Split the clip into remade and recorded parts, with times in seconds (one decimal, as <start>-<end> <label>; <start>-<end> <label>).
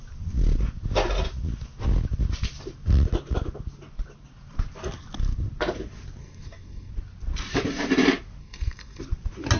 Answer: 0.0-6.2 recorded; 6.2-6.9 remade; 6.9-8.4 recorded; 8.4-9.0 remade; 9.0-9.6 recorded